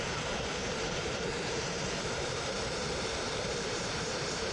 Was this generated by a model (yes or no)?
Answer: yes